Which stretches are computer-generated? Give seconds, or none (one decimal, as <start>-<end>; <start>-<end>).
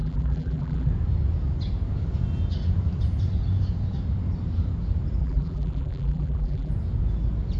0.0-0.9; 5.2-6.7